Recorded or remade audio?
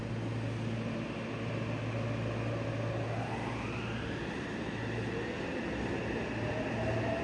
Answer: recorded